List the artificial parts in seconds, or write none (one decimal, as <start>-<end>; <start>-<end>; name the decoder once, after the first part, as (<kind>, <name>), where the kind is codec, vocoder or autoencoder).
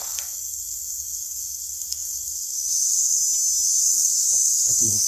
0.0-3.2 (codec, SNAC); 3.8-5.1